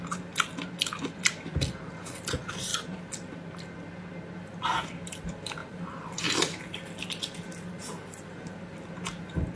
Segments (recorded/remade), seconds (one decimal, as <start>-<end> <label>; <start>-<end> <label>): 0.0-2.7 recorded; 2.7-3.6 remade; 3.6-5.6 recorded; 5.6-6.6 remade; 6.6-9.6 recorded